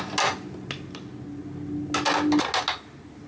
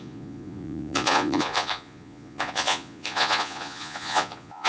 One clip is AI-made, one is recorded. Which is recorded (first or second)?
first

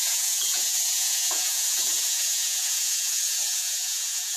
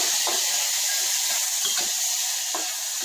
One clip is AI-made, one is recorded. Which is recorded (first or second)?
second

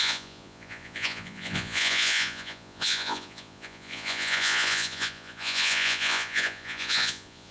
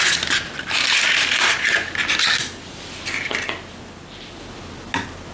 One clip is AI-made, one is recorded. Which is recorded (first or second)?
second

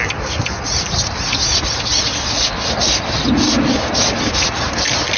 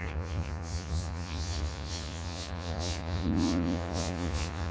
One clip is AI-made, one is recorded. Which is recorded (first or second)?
first